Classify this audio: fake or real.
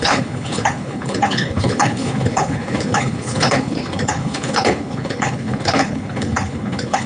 fake